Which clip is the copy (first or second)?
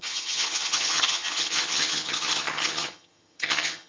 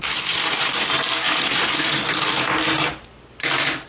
first